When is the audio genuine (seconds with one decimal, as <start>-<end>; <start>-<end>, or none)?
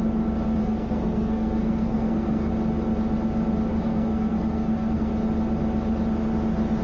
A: 0.0-0.6; 2.5-3.7; 5.1-6.8